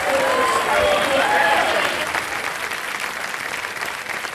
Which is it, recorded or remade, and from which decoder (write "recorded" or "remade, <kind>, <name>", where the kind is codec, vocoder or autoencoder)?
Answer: remade, vocoder, BigVGAN v2